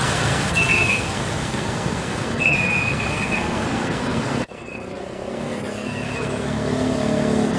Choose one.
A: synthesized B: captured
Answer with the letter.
A